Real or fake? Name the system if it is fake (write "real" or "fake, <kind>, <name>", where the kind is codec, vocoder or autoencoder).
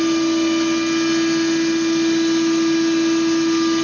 real